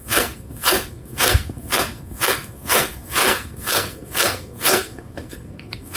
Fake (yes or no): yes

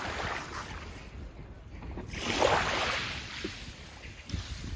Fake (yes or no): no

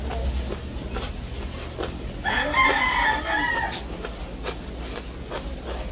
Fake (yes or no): no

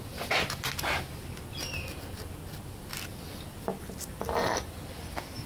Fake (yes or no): no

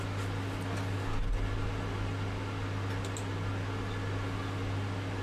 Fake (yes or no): no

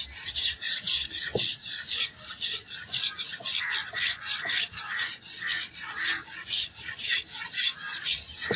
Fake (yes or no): no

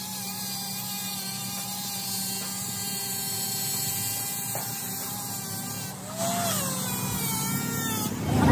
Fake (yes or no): no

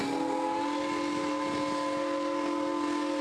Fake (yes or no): no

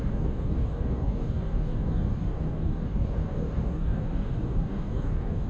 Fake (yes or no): yes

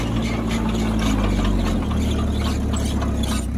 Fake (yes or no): no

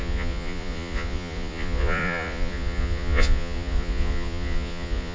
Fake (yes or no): yes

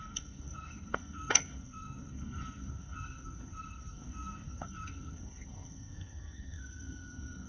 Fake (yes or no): yes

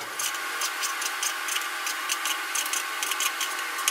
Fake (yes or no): no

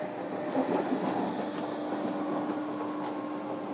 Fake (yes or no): no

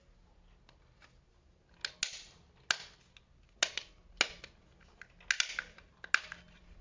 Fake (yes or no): no